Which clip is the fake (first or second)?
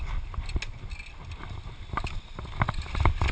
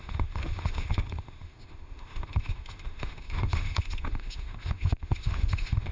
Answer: second